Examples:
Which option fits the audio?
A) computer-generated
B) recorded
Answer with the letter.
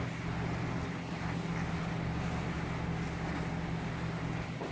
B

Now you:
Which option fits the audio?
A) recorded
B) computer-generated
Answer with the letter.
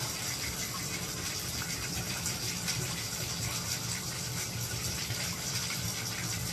B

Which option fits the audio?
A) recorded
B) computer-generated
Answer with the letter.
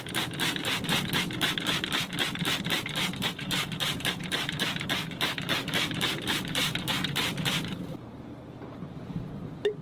B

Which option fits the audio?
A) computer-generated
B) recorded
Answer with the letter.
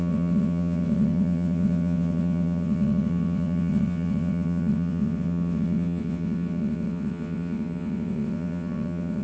A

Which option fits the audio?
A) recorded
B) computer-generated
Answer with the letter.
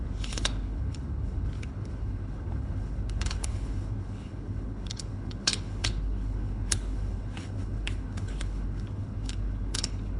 B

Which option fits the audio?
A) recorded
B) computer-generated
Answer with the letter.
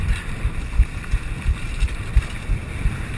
A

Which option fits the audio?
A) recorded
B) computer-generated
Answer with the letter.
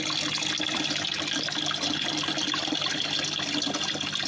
A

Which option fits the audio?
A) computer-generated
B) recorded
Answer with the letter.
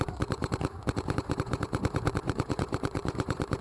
A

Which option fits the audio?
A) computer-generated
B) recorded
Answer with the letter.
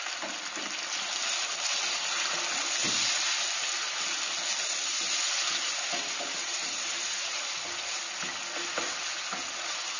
B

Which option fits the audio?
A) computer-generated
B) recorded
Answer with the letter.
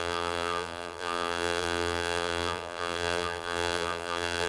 A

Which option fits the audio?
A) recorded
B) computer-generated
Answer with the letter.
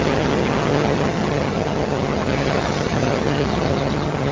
B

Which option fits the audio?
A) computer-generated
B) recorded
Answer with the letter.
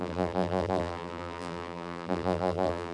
A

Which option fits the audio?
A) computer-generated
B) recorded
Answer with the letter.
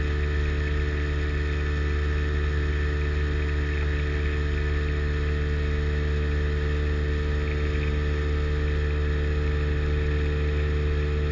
B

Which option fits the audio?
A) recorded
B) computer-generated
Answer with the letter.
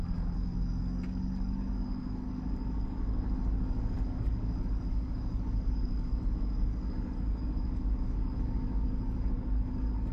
B